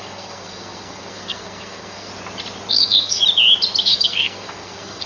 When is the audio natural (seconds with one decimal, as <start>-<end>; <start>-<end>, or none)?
2.1-2.7; 3.2-3.8